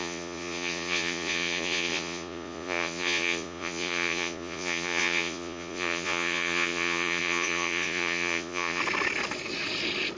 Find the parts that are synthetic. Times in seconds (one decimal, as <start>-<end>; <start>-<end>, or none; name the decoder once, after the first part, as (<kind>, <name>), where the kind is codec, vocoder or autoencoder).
0.0-8.8 (vocoder, Vocos)